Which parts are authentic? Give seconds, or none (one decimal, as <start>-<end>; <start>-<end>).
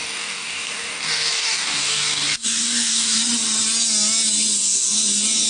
3.2-5.5